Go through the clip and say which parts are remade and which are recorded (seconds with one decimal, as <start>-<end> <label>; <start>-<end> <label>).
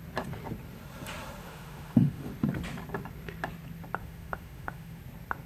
0.0-1.4 recorded; 1.4-2.3 remade; 2.3-4.0 recorded; 4.0-5.0 remade; 5.0-5.5 recorded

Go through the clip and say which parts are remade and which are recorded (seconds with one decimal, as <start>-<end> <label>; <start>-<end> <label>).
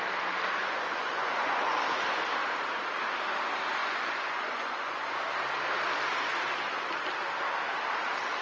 0.0-0.6 recorded; 0.6-1.8 remade; 1.8-3.8 recorded; 3.8-5.3 remade; 5.3-8.4 recorded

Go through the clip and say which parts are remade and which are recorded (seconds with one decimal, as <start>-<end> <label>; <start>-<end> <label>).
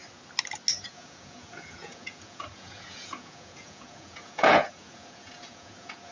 0.0-0.7 recorded; 0.7-6.1 remade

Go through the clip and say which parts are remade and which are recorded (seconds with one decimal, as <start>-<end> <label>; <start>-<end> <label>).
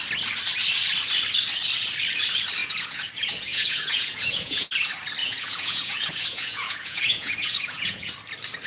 0.0-2.6 recorded; 2.6-3.1 remade; 3.1-3.5 recorded; 3.5-4.7 remade; 4.7-5.2 recorded; 5.2-8.1 remade; 8.1-8.7 recorded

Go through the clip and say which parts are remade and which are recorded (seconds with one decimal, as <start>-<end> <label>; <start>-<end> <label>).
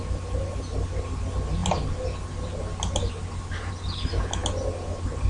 0.0-5.3 recorded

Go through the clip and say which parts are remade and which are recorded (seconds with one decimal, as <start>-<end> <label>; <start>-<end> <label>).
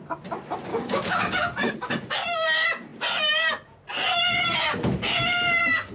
0.0-0.7 recorded; 0.7-1.7 remade; 1.7-5.9 recorded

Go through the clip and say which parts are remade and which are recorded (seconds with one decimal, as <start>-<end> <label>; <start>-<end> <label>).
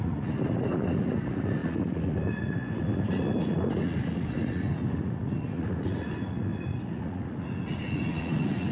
0.0-8.7 remade